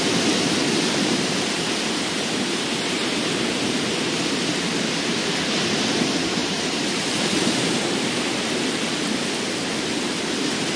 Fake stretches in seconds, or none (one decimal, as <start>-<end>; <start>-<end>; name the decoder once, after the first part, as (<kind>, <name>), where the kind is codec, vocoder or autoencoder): 0.6-4.7 (vocoder, BigVGAN v2); 6.4-8.4